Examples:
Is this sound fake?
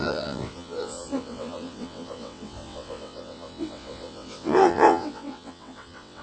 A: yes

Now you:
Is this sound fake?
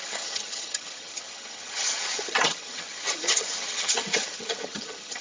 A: yes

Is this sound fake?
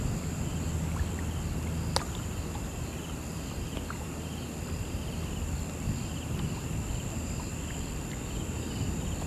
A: no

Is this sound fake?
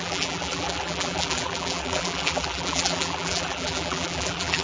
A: yes